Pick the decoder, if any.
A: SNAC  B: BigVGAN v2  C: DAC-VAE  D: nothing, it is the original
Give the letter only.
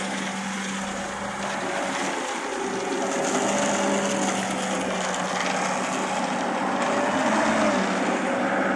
D